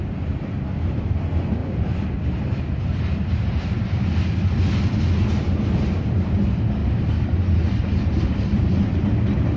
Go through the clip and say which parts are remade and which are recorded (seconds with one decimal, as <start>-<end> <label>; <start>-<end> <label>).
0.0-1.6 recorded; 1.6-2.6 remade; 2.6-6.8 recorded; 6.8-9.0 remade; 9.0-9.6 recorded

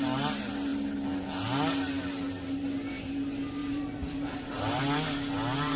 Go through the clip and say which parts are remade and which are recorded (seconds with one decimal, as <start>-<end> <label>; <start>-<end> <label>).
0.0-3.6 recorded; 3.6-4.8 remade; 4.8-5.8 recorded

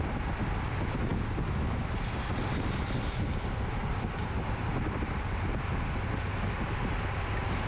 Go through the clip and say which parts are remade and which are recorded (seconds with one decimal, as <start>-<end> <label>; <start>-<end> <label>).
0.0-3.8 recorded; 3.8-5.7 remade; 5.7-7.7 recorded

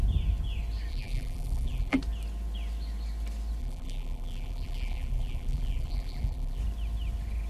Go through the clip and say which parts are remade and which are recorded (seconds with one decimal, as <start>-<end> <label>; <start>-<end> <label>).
0.0-0.9 recorded; 0.9-2.0 remade; 2.0-3.6 recorded; 3.6-6.6 remade; 6.6-7.5 recorded

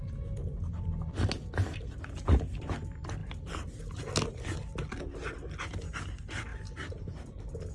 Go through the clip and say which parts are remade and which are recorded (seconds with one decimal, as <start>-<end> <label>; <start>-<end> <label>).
0.0-3.2 recorded; 3.2-4.0 remade; 4.0-6.5 recorded; 6.5-7.7 remade

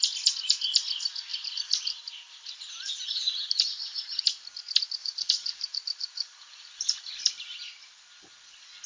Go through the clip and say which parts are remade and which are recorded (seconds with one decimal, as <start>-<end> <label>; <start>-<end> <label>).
0.0-1.3 recorded; 1.3-4.0 remade; 4.0-5.0 recorded; 5.0-7.6 remade; 7.6-8.9 recorded

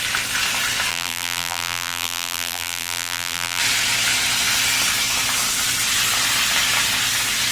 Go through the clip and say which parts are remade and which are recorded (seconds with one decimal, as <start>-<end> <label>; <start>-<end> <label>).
0.0-0.9 recorded; 0.9-3.6 remade; 3.6-7.5 recorded